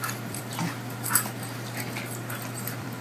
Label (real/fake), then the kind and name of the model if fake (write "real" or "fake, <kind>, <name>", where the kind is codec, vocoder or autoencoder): fake, vocoder, BigVGAN v2